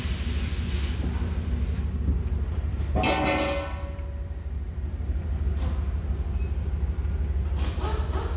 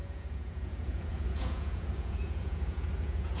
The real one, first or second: first